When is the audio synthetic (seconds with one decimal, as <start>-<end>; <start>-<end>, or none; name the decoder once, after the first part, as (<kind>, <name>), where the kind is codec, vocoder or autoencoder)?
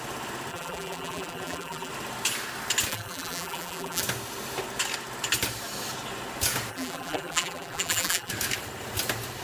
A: 0.5-1.9 (vocoder, BigVGAN v2); 2.9-4.0; 6.7-8.3